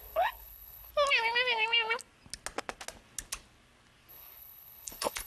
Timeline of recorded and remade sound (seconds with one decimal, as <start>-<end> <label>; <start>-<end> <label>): 0.0-0.9 remade; 0.9-4.1 recorded; 4.1-5.3 remade